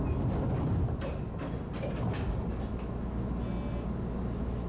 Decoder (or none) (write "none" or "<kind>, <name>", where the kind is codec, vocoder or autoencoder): none